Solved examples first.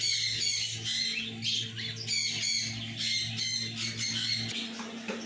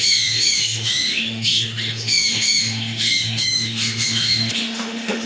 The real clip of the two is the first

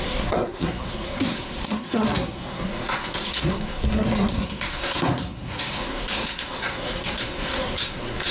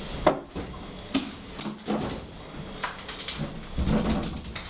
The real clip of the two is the second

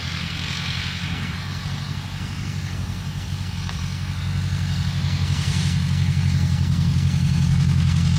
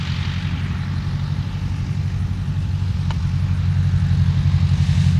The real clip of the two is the second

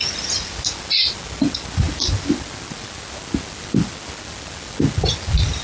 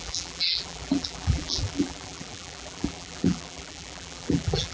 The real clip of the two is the first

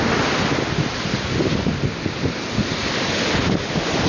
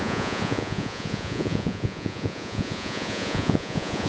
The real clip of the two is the first